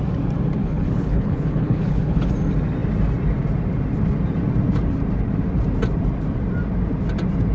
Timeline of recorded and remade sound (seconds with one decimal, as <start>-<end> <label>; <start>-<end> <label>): 0.0-0.6 recorded; 0.6-2.3 remade; 2.3-7.5 recorded